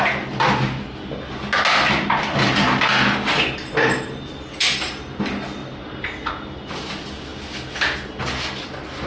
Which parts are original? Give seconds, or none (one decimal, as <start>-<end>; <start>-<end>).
0.0-5.6; 6.3-9.1